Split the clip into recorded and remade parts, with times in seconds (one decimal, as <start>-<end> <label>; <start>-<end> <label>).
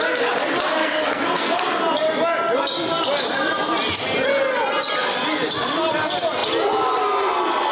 0.0-0.8 recorded; 0.8-1.6 remade; 1.6-7.7 recorded